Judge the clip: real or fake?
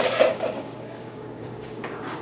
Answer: fake